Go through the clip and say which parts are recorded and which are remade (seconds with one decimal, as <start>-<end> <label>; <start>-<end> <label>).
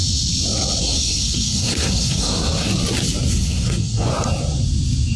0.0-0.8 recorded; 0.8-2.7 remade; 2.7-3.3 recorded; 3.3-4.1 remade; 4.1-5.2 recorded